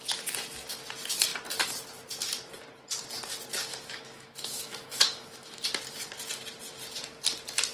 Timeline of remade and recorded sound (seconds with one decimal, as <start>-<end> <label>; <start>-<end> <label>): 0.0-3.7 recorded; 3.7-5.6 remade; 5.6-7.7 recorded